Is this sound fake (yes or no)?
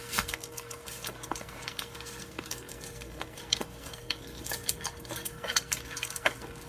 yes